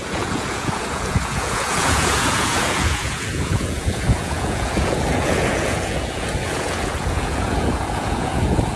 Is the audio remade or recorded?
remade